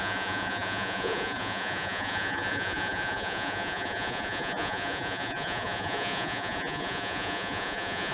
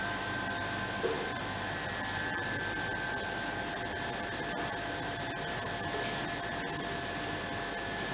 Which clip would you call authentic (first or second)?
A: second